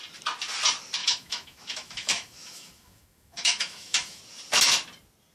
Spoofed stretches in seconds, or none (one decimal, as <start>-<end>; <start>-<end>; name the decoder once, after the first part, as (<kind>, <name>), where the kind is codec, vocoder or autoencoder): 1.0-4.2 (autoencoder, DAC-VAE)